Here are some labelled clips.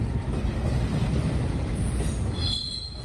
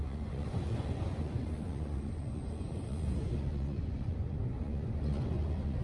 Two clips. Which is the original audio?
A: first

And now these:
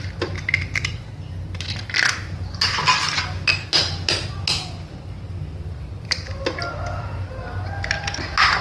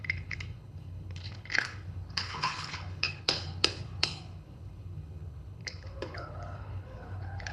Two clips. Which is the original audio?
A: first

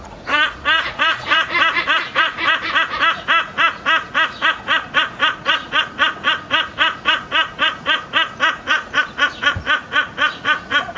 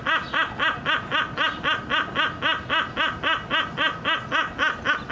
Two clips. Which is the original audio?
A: second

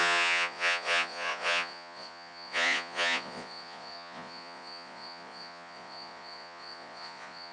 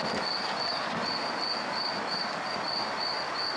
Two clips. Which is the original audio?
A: second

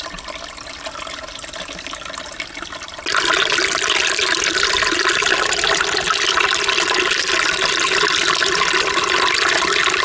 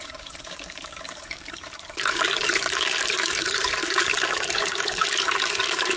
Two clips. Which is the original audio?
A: first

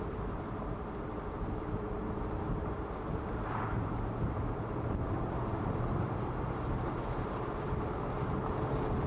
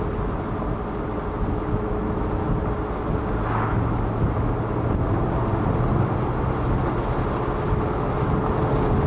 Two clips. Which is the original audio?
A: second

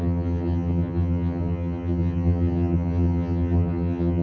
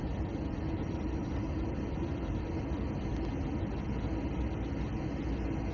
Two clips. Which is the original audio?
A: second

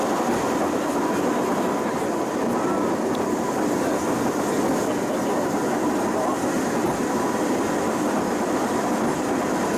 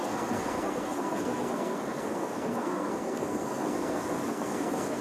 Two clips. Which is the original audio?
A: first